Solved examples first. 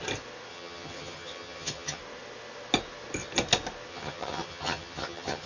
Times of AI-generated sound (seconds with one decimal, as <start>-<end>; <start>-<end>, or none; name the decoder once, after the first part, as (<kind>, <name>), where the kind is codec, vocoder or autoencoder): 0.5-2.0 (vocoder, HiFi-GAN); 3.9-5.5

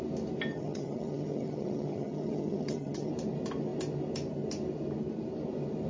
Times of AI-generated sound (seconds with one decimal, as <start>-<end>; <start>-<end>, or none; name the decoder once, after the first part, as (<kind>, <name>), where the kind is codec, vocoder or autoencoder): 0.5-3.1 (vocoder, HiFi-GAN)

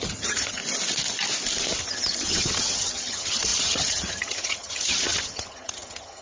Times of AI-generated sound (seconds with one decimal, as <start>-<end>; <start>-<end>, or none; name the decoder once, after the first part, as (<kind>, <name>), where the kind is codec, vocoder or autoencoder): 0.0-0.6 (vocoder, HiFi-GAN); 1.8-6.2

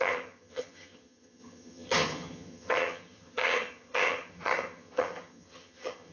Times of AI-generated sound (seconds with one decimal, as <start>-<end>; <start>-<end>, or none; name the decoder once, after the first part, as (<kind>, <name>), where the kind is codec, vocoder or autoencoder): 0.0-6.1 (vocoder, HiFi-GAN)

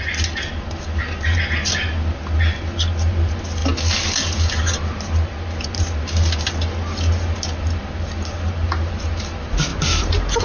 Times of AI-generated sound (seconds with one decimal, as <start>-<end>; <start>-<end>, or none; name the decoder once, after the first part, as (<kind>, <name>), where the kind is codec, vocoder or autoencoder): none